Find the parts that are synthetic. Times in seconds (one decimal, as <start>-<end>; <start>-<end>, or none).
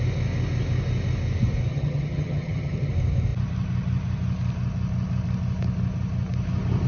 1.7-2.9